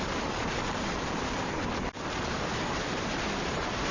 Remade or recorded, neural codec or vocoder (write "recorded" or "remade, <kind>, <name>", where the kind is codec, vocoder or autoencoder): remade, vocoder, BigVGAN v2